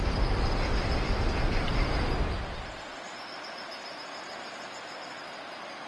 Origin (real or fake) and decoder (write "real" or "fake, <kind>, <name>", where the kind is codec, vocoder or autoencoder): real